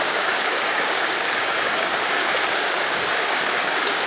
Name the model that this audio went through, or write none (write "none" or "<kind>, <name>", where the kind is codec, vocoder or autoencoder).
codec, DAC